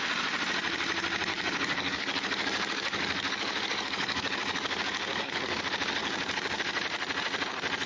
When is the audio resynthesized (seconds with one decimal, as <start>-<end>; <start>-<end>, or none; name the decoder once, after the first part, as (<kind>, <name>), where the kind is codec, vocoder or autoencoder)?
1.3-5.6 (codec, DAC); 6.0-6.6